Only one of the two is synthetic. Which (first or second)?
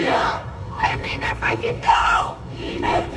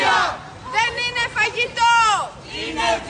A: first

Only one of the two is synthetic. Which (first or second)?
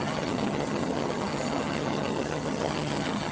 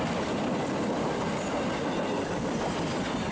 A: first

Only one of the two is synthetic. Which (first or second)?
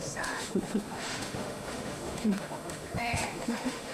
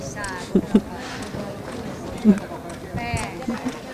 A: first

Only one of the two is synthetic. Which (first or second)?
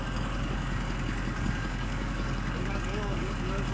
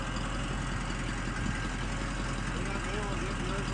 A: first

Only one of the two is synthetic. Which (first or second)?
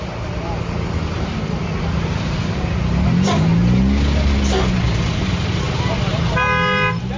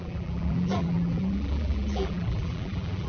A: second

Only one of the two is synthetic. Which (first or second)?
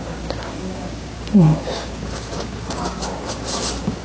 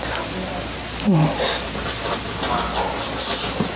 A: first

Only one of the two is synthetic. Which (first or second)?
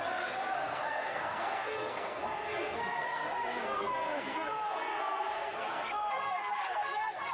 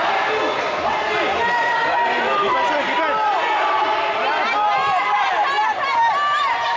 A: first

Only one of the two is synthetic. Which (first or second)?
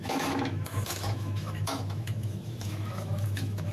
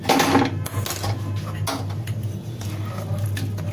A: first